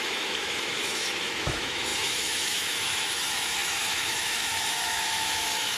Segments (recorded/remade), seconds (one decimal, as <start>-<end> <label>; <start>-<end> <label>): 0.0-5.8 remade